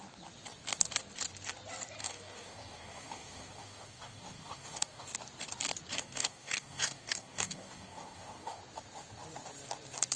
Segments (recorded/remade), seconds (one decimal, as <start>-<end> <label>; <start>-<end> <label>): 0.0-2.0 recorded; 2.0-5.1 remade; 5.1-5.9 recorded; 5.9-8.6 remade; 8.6-10.2 recorded